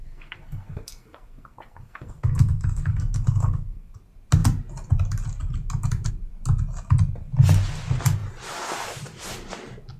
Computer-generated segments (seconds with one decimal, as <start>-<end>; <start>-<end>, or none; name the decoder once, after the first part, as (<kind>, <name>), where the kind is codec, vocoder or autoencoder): 0.0-3.9 (codec, SNAC)